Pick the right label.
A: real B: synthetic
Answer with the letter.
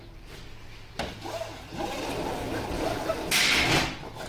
A